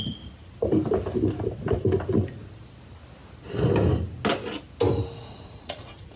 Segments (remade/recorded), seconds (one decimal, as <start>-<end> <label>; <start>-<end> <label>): 0.0-5.2 recorded; 5.2-6.2 remade